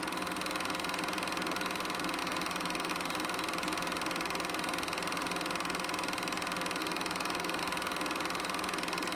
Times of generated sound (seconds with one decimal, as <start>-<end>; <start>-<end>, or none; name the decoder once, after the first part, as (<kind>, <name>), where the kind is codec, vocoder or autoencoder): 2.2-2.9 (autoencoder, DAC-VAE); 6.8-7.6